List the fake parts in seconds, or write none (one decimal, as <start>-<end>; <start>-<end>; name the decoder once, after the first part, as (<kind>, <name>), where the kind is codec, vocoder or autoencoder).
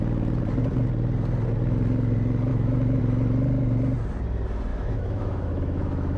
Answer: 2.5-3.0 (autoencoder, DAC-VAE); 4.7-6.2